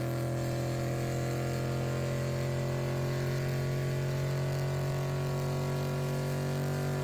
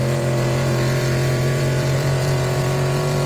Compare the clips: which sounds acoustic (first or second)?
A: first